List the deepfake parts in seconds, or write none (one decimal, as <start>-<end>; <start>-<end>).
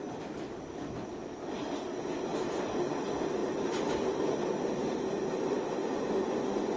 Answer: 5.8-6.8